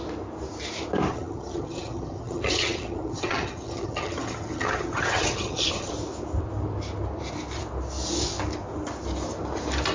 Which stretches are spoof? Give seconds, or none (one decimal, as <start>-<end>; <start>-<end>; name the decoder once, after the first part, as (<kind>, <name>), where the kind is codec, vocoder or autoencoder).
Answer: 1.1-5.9 (vocoder, HiFi-GAN)